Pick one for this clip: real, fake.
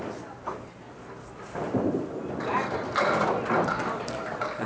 real